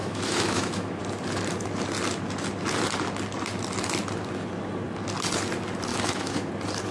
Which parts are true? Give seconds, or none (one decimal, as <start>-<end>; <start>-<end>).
1.0-5.9; 6.5-6.9